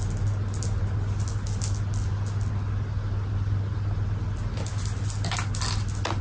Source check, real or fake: real